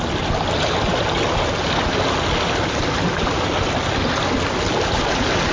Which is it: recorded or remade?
recorded